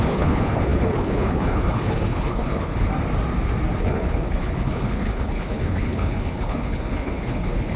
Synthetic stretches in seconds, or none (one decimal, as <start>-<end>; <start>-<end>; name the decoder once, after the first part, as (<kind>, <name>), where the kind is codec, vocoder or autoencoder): 0.0-2.9 (codec, HILCodec); 3.8-7.8